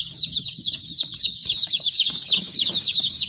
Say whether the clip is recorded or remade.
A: remade